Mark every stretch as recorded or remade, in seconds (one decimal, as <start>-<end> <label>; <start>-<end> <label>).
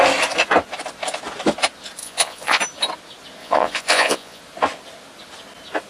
0.0-2.0 recorded; 2.0-2.6 remade; 2.6-3.4 recorded; 3.4-4.4 remade; 4.4-5.9 recorded